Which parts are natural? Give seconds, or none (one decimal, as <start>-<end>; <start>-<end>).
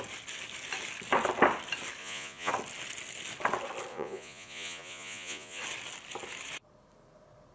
0.0-2.0; 2.5-3.9; 5.6-7.5